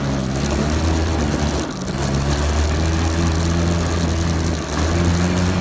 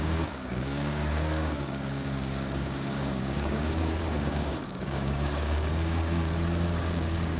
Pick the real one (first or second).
first